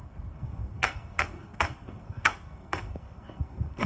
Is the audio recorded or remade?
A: remade